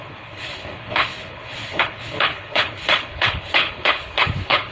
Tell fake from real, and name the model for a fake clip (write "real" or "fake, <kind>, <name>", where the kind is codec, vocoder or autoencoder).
fake, codec, HILCodec